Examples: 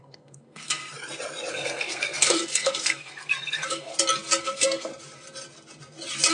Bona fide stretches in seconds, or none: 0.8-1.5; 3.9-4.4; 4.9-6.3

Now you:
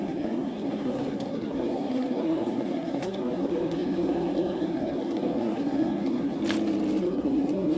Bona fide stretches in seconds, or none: 6.4-7.0

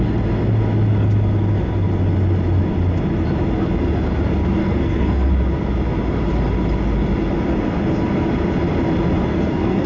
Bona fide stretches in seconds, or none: 0.0-4.6; 5.3-9.3

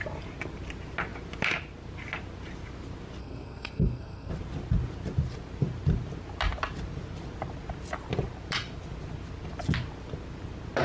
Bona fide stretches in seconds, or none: 0.0-3.2; 4.3-10.8

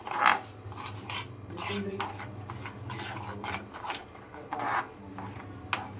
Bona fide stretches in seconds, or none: 0.0-6.0

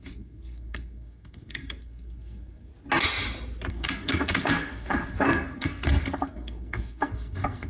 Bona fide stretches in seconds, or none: 2.7-3.7

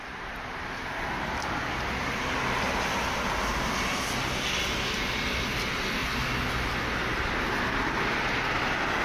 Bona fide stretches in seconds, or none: 0.0-9.0